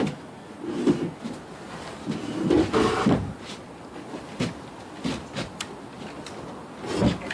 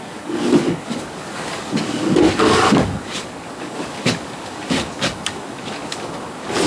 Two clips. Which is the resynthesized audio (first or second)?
second